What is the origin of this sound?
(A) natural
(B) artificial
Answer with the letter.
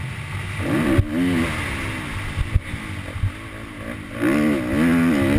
A